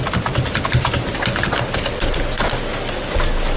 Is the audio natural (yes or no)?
yes